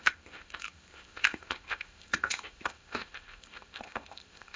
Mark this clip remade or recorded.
remade